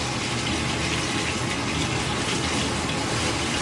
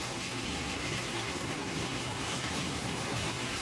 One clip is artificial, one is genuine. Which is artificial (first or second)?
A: second